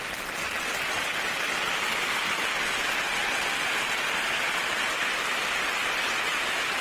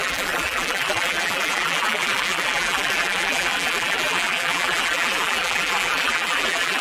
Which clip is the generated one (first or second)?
second